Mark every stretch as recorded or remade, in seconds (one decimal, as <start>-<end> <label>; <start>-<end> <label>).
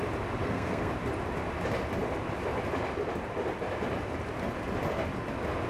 0.0-0.4 recorded; 0.4-0.9 remade; 0.9-5.7 recorded